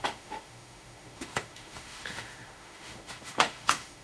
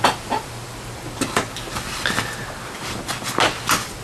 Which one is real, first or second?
second